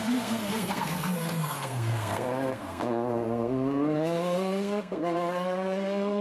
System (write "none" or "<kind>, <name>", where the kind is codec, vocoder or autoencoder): codec, SNAC